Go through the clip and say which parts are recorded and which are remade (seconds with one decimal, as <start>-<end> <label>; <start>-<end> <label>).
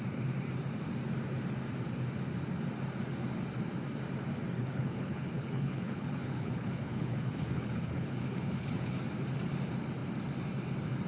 0.0-4.6 recorded; 4.6-9.0 remade; 9.0-11.1 recorded